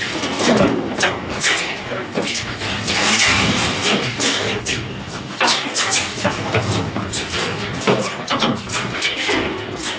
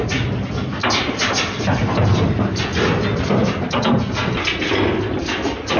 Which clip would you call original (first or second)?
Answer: second